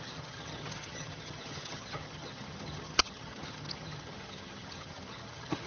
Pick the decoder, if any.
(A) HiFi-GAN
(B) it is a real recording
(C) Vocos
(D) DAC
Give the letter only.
A